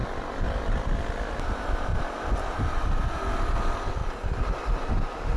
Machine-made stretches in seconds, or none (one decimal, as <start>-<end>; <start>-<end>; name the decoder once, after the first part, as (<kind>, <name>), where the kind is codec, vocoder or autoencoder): 1.4-1.9 (vocoder, BigVGAN v2); 3.3-4.0; 4.9-5.4